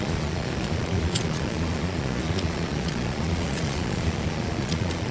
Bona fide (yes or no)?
no